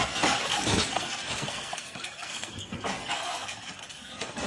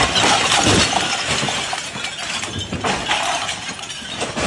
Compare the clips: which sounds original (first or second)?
second